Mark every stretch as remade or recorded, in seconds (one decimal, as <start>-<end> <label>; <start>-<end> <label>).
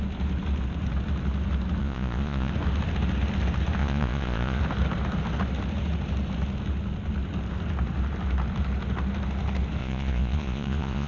0.0-1.8 recorded; 1.8-2.5 remade; 2.5-3.8 recorded; 3.8-4.6 remade; 4.6-9.8 recorded; 9.8-11.1 remade